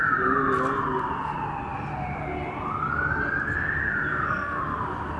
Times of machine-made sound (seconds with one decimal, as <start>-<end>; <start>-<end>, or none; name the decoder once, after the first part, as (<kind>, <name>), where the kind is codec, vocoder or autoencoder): 4.1-4.6 (codec, SNAC)